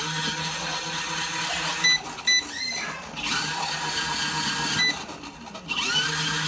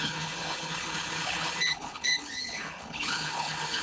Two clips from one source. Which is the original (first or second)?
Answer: first